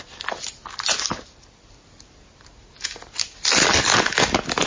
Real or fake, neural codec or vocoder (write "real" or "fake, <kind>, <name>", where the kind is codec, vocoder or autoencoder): real